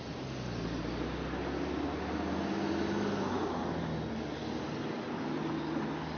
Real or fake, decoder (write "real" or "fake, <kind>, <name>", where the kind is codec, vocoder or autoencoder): real